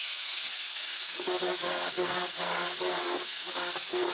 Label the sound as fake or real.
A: fake